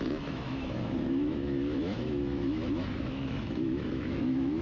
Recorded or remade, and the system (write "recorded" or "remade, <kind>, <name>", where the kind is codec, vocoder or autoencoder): remade, autoencoder, DAC-VAE